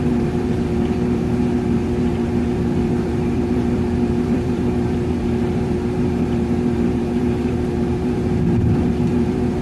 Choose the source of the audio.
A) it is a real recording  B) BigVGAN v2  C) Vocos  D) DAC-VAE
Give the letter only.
B